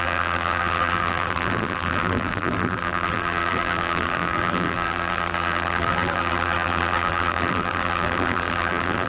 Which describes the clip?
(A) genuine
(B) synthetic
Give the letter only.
B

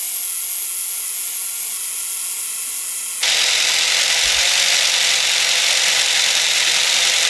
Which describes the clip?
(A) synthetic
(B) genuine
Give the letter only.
B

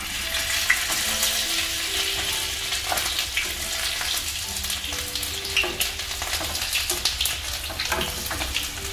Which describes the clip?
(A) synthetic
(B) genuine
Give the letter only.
B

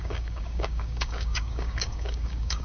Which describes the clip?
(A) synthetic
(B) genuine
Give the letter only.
A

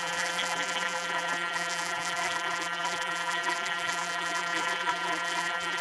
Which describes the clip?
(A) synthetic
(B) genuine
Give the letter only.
A